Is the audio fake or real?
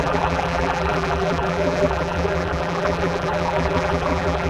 fake